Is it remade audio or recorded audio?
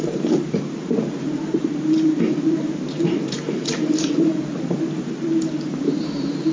remade